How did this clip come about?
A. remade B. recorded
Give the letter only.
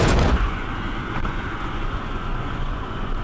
A